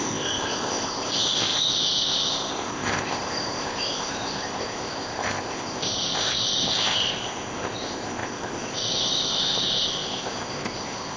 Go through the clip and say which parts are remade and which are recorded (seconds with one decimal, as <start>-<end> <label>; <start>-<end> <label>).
0.0-11.2 remade